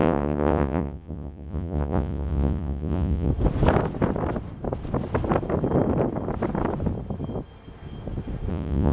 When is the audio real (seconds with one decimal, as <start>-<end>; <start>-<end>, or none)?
3.3-8.5